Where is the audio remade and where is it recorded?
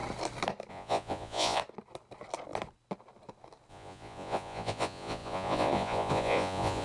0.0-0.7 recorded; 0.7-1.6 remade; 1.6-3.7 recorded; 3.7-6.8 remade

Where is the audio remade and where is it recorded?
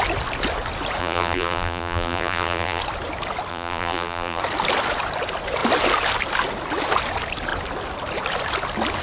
0.0-1.0 recorded; 1.0-2.8 remade; 2.8-3.5 recorded; 3.5-4.4 remade; 4.4-9.0 recorded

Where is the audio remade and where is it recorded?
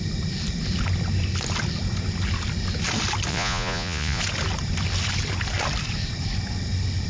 0.0-3.3 recorded; 3.3-4.2 remade; 4.2-7.1 recorded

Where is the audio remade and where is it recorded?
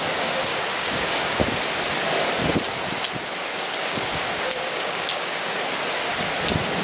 0.0-0.5 recorded; 0.5-1.4 remade; 1.4-3.8 recorded; 3.8-5.5 remade; 5.5-6.8 recorded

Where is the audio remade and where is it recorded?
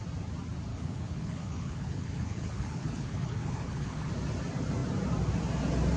0.0-0.7 recorded; 0.7-4.1 remade; 4.1-6.0 recorded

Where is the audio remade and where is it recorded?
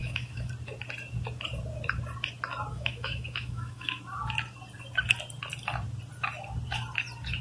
0.0-0.5 remade; 0.5-2.7 recorded; 2.7-4.0 remade; 4.0-7.4 recorded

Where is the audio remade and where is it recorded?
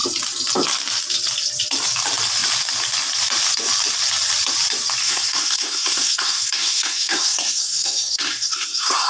0.0-5.0 recorded; 5.0-9.1 remade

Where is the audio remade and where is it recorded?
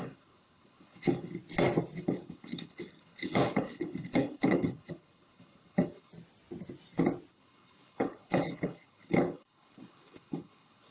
0.0-1.4 remade; 1.4-2.0 recorded; 2.0-6.1 remade; 6.1-7.3 recorded; 7.3-10.9 remade